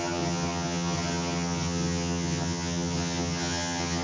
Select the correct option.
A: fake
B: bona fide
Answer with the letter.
A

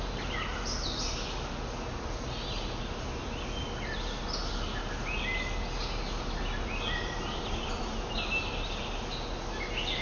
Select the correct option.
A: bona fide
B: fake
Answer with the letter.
A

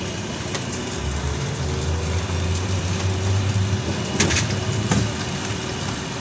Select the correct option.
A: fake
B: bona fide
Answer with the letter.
B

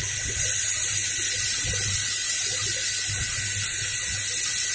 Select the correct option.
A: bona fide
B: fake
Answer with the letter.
A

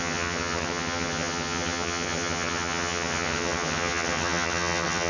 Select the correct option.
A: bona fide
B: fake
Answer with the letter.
B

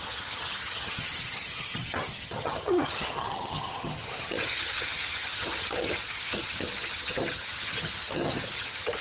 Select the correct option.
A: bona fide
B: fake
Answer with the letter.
B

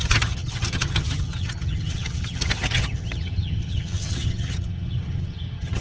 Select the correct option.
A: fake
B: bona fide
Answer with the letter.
A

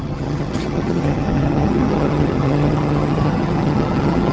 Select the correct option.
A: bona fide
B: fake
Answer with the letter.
B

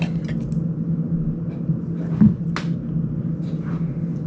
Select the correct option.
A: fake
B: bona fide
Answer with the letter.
B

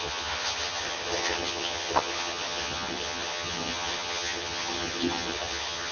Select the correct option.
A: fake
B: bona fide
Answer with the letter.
A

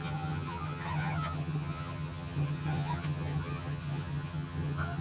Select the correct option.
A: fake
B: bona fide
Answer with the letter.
A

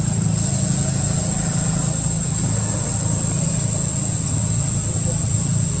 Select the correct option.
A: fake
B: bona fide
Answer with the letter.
B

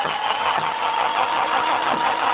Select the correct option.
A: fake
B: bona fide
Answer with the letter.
A